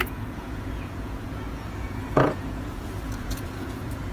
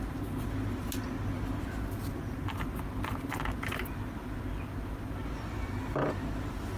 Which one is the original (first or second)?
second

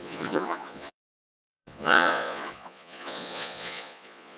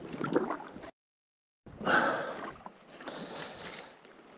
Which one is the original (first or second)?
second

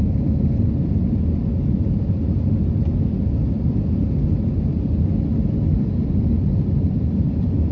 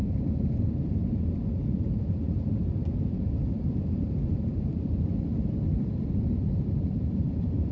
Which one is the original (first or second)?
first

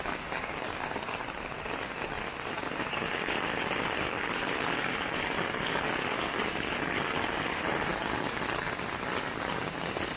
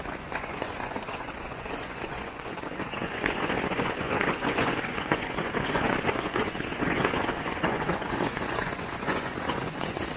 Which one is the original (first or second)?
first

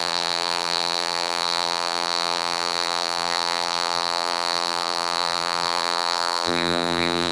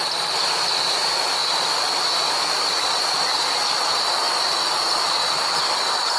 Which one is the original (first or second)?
second